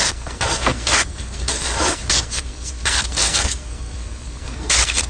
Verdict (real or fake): fake